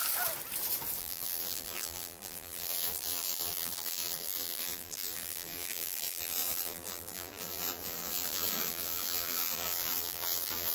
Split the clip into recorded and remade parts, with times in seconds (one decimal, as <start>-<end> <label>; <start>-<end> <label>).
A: 0.0-1.0 recorded; 1.0-10.7 remade